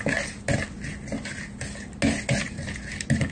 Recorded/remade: recorded